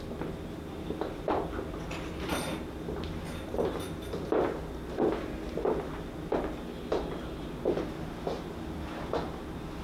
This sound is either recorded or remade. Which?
recorded